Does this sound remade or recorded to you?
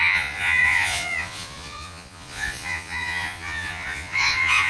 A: remade